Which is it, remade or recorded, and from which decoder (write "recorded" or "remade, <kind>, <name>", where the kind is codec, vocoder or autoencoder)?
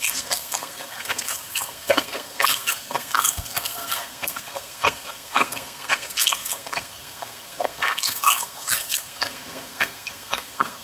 remade, codec, SNAC